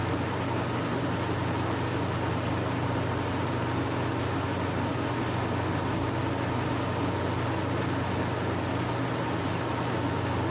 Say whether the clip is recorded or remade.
recorded